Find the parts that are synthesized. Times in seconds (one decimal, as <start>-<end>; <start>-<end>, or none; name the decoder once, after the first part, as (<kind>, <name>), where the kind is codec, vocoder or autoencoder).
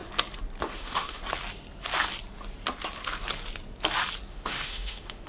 0.6-1.2 (autoencoder, DAC-VAE); 4.3-5.3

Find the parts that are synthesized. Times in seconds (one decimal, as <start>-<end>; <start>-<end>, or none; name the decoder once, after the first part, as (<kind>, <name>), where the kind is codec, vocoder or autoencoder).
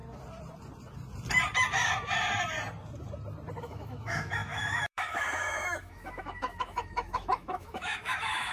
3.6-8.5 (autoencoder, DAC-VAE)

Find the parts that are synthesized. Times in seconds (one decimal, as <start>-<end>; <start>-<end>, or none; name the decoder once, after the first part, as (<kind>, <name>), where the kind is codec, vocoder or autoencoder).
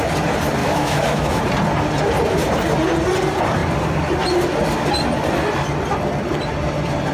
0.6-1.4 (autoencoder, DAC-VAE)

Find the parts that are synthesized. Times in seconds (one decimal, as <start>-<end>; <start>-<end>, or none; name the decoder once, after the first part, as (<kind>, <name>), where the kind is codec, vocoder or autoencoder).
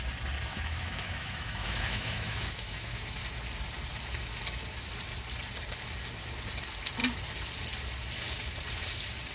0.5-3.2 (autoencoder, DAC-VAE)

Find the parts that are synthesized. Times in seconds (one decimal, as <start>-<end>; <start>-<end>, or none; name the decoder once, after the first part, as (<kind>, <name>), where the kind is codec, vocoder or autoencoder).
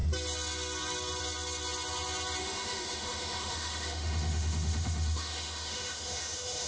2.4-6.7 (autoencoder, DAC-VAE)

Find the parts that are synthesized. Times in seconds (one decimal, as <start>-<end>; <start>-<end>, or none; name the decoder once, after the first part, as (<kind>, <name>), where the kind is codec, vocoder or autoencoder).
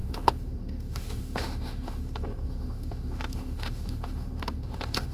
0.0-5.1 (autoencoder, DAC-VAE)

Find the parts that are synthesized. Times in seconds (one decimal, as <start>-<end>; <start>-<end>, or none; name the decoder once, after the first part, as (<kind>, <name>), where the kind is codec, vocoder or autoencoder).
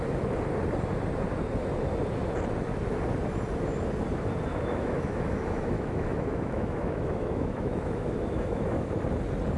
4.5-8.9 (autoencoder, DAC-VAE)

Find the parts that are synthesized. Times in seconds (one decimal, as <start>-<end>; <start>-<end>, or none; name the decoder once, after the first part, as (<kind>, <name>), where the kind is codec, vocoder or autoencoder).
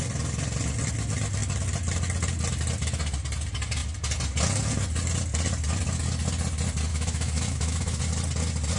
6.9-8.0 (autoencoder, DAC-VAE)